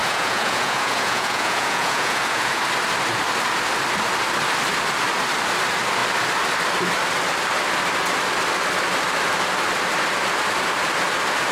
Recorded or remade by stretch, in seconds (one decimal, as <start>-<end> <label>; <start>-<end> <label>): 0.0-2.6 remade; 2.6-11.5 recorded